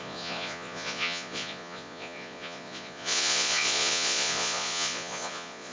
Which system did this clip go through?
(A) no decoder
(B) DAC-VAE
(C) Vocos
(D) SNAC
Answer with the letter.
C